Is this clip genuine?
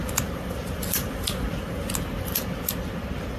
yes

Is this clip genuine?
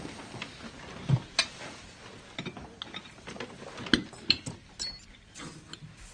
yes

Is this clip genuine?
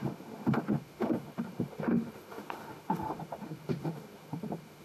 no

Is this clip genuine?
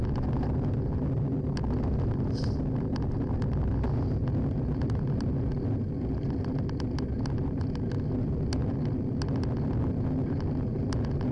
yes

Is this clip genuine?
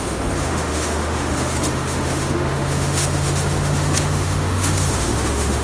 no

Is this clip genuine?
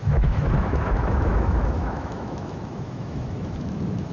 no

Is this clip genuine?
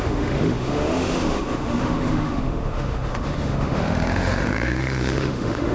no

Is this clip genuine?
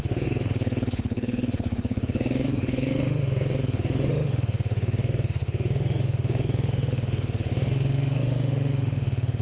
no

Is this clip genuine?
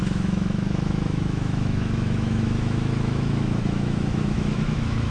no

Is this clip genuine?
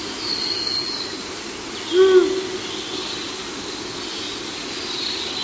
yes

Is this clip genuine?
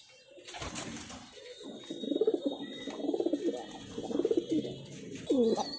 yes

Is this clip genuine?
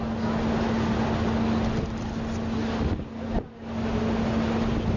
yes